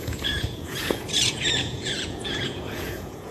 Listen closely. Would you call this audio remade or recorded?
remade